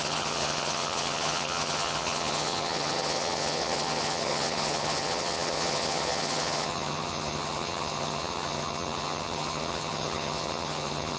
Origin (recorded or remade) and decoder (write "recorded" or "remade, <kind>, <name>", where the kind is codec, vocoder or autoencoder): remade, vocoder, HiFi-GAN